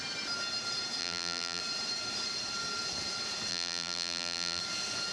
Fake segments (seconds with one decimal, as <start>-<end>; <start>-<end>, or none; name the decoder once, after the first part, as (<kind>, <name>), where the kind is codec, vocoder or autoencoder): 1.0-1.6 (vocoder, BigVGAN v2); 3.5-4.6